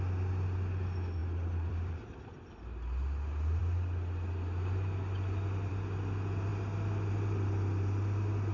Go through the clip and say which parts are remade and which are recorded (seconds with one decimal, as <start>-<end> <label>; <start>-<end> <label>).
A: 0.0-1.2 recorded; 1.2-2.3 remade; 2.3-8.5 recorded